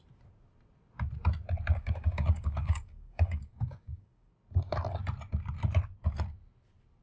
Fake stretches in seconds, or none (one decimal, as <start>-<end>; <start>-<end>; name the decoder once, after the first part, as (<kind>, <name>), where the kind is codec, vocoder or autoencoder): 1.8-4.3 (codec, DAC)